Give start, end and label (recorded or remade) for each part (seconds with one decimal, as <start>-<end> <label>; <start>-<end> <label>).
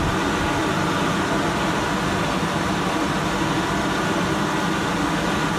0.0-5.6 recorded